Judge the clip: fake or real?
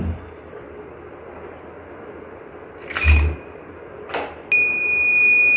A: real